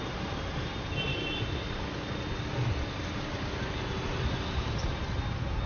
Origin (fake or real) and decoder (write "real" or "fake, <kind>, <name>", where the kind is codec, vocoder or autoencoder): real